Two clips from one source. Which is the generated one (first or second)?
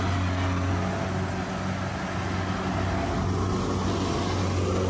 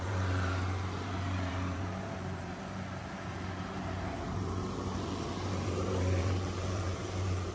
second